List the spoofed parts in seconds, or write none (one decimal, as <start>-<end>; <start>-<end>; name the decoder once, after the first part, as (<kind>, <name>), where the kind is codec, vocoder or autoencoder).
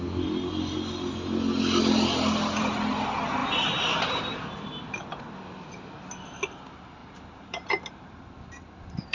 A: 3.4-4.9 (vocoder, BigVGAN v2); 7.0-7.9